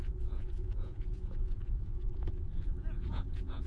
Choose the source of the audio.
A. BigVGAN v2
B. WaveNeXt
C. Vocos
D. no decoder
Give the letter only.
C